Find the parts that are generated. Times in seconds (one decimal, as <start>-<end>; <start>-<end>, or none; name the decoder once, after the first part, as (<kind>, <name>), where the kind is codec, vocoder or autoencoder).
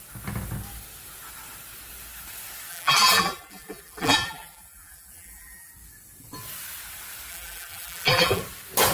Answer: 2.7-5.7 (vocoder, BigVGAN v2); 7.3-8.4